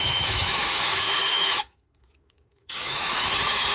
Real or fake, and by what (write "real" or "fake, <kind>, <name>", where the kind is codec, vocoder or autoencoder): fake, autoencoder, DAC-VAE